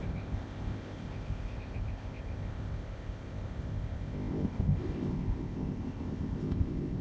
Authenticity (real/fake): fake